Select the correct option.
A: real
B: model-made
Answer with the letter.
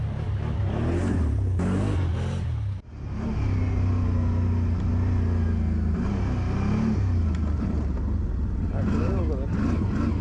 A